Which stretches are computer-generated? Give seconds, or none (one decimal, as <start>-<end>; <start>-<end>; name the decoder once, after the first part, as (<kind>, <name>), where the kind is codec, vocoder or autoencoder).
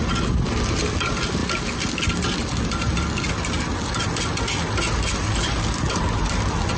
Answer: none